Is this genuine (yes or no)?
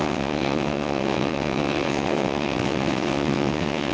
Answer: no